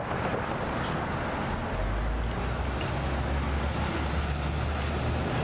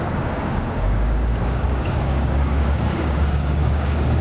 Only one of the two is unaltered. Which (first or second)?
first